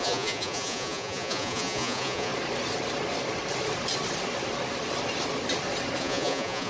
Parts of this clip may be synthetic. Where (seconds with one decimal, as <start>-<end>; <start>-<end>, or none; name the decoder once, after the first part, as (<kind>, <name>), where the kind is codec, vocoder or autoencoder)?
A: 0.0-2.3 (vocoder, Vocos); 6.0-6.7